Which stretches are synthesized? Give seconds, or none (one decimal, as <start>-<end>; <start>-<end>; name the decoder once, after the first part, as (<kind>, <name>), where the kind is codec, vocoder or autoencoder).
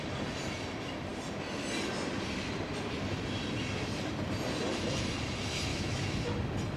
5.7-6.2 (autoencoder, DAC-VAE)